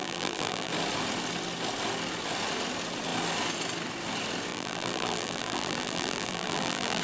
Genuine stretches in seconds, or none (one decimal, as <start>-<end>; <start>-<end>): 0.7-4.5